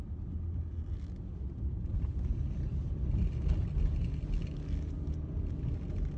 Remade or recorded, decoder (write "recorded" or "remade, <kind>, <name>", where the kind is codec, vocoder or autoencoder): recorded